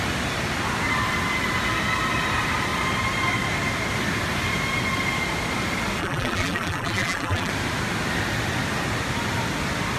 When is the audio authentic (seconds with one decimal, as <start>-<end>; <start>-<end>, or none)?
0.0-6.0; 7.5-10.0